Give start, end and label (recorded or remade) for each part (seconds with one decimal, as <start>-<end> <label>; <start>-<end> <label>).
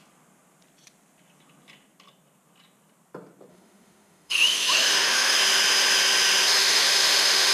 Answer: 0.0-3.5 recorded; 3.5-5.4 remade; 5.4-6.6 recorded; 6.6-7.5 remade